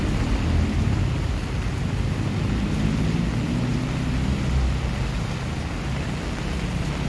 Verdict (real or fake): real